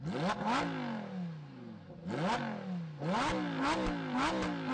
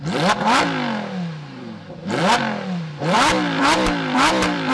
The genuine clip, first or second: first